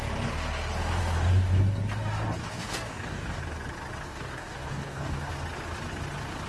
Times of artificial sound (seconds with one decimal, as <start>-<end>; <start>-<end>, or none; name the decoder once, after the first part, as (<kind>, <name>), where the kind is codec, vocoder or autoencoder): 2.4-3.4 (codec, DAC); 4.1-5.3